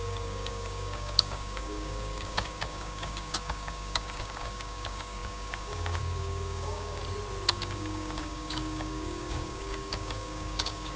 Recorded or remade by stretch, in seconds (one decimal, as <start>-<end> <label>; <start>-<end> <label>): 0.0-7.0 remade; 7.0-7.5 recorded; 7.5-11.0 remade